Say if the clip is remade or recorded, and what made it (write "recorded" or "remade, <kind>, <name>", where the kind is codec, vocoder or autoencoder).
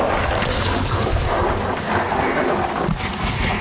recorded